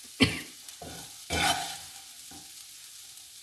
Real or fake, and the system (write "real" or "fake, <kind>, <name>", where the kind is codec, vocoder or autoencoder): real